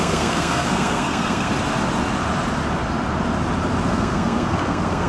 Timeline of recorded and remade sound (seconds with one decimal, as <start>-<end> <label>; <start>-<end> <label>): 0.0-1.5 remade; 1.5-3.9 recorded; 3.9-5.1 remade